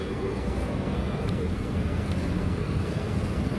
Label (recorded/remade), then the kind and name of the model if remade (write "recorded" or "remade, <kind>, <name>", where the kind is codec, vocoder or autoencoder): remade, codec, SNAC